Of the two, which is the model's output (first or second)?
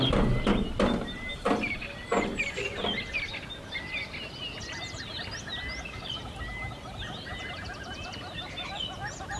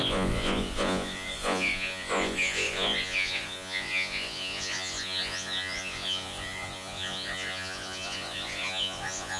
second